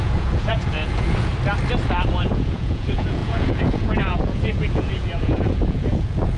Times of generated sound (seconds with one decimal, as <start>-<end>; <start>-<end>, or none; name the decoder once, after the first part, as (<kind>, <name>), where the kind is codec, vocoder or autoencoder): 0.0-1.3 (vocoder, Vocos); 2.1-6.4